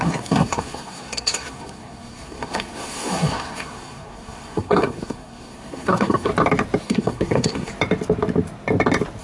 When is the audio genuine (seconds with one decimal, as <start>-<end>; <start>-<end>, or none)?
6.3-6.8; 7.7-9.2